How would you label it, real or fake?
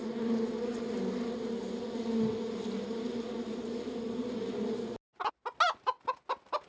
real